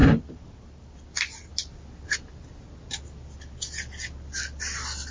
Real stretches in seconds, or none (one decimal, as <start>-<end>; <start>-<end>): 0.0-5.1